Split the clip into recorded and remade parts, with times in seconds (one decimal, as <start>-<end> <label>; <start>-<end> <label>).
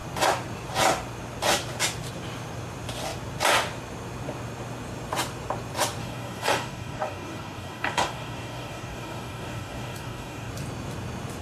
0.0-6.0 recorded; 6.0-10.5 remade; 10.5-11.4 recorded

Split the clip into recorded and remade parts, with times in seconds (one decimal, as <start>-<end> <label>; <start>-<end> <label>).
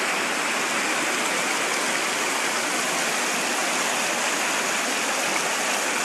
0.0-6.0 recorded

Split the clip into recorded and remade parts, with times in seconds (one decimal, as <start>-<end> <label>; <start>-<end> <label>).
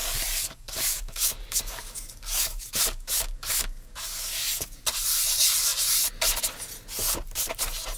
0.0-4.8 remade; 4.8-8.0 recorded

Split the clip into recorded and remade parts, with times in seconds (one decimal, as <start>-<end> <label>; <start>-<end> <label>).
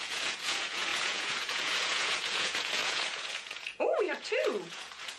0.0-5.2 remade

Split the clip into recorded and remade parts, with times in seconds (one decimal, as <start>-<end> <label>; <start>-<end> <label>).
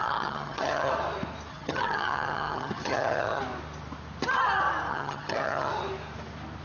0.0-0.9 remade; 0.9-1.5 recorded; 1.5-3.4 remade; 3.4-4.9 recorded; 4.9-5.7 remade; 5.7-6.6 recorded